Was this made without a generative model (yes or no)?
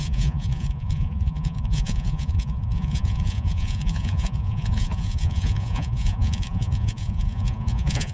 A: no